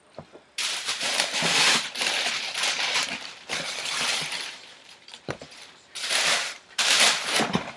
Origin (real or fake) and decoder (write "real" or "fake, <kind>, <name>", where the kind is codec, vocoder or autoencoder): fake, vocoder, BigVGAN v2